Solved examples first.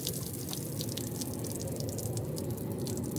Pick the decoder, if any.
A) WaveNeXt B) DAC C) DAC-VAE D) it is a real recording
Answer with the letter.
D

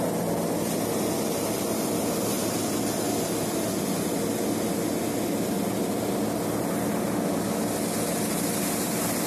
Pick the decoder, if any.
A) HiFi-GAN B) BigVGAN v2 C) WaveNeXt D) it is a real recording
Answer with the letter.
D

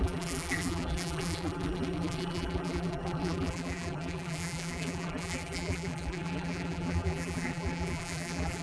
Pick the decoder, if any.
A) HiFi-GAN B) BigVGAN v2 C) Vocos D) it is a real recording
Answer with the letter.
B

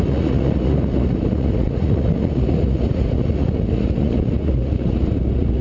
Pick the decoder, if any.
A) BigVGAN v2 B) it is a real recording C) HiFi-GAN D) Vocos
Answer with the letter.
D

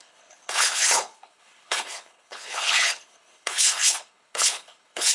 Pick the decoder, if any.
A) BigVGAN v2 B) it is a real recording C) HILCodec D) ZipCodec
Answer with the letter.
C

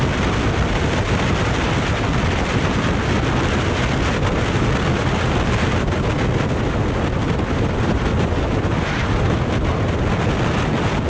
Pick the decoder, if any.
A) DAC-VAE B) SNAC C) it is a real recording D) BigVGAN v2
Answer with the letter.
C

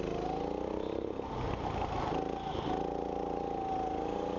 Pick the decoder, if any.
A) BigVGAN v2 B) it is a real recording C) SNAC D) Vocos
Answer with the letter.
B